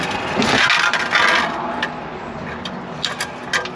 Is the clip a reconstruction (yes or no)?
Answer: no